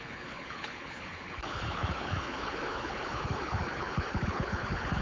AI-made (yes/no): yes